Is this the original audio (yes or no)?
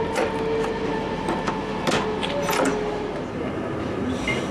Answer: yes